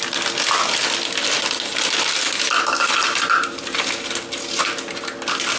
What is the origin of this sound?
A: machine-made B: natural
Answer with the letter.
B